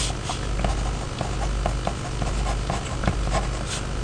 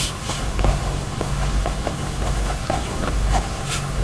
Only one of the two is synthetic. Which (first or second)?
second